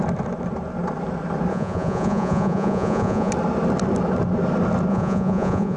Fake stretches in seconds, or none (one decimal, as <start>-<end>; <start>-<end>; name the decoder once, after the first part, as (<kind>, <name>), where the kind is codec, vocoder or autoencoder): 1.5-3.3 (vocoder, Vocos); 4.9-5.8